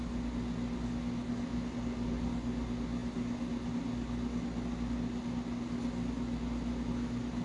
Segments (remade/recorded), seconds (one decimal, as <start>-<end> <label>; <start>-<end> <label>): 0.0-7.4 recorded